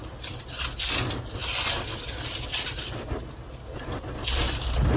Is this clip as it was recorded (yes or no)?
yes